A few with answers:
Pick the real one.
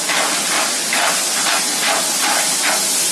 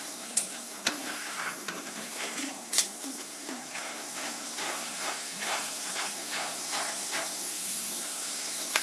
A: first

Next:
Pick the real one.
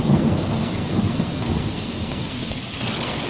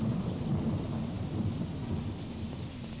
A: second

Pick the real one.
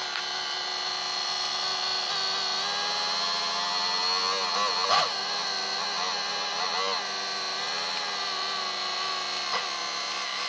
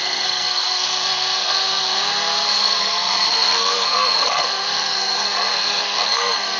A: first